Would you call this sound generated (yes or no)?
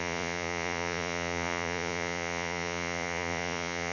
yes